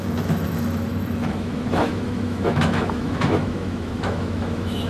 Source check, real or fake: fake